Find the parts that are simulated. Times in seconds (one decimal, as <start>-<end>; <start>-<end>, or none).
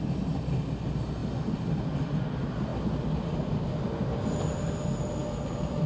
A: none